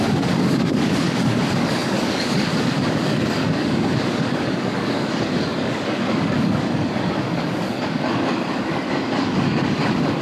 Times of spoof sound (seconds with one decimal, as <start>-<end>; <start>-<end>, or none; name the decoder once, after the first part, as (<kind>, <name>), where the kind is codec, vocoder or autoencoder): 0.0-10.2 (codec, DAC)